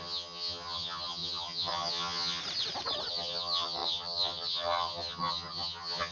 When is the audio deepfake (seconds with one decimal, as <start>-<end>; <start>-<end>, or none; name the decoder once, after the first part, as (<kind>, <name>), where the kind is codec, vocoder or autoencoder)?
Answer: 0.0-2.4 (vocoder, HiFi-GAN); 3.1-6.1